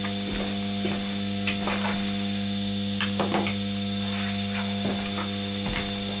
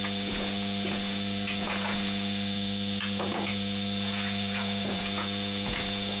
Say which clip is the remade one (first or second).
second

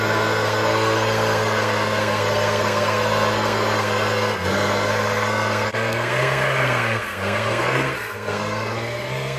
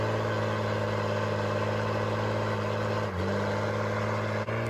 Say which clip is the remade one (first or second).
first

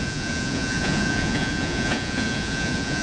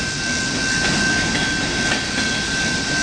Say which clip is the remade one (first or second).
first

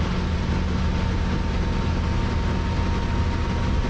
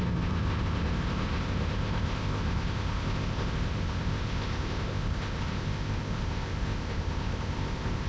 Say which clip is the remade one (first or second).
second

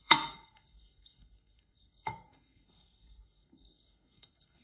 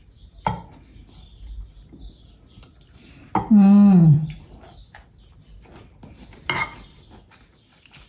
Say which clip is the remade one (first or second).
first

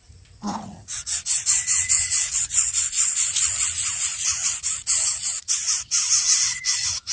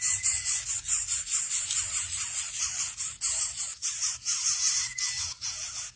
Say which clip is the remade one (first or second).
first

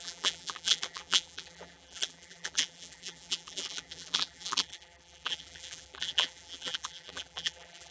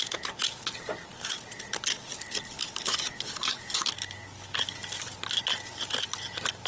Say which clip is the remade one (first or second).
first